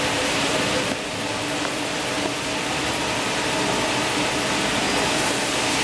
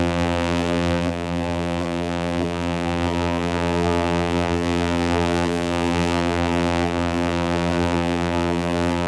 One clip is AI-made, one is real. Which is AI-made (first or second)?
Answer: second